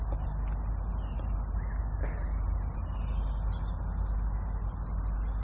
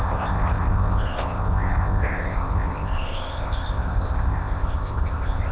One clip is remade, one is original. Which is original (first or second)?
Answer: first